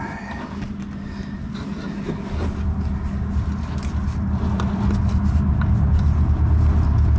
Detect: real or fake real